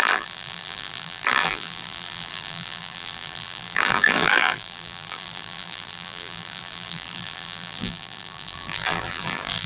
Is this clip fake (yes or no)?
yes